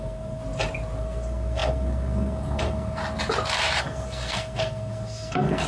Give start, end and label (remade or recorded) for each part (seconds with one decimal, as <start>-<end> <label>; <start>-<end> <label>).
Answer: 0.0-0.4 remade; 0.4-1.0 recorded; 1.0-3.0 remade; 3.0-3.8 recorded; 3.8-5.7 remade